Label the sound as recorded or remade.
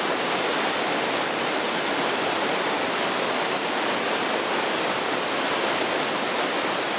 recorded